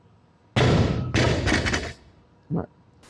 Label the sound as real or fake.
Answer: real